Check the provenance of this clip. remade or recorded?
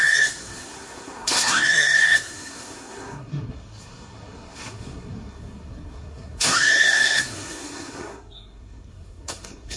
remade